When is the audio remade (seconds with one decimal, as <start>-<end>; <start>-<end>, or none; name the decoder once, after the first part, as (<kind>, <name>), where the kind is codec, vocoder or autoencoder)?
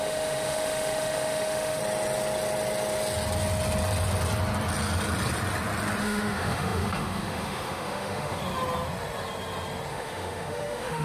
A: 0.0-1.8 (autoencoder, DAC-VAE); 6.0-8.4; 9.9-11.0